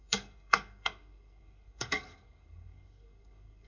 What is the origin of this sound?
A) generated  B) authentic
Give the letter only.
A